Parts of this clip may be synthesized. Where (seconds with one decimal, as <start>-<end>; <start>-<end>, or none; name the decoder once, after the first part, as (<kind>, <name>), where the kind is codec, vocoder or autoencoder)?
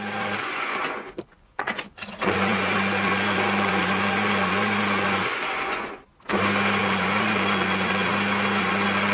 0.0-6.1 (vocoder, Vocos); 6.8-8.1; 8.6-9.1